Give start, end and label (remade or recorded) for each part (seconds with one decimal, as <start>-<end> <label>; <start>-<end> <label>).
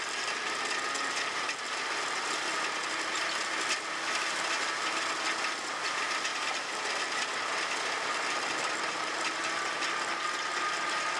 0.0-11.2 recorded